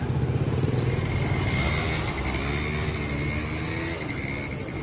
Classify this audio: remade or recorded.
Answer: recorded